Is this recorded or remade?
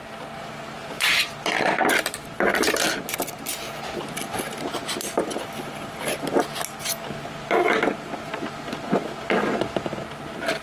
recorded